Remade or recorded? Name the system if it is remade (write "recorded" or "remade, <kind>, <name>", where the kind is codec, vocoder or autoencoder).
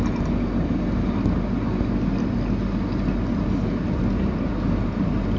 recorded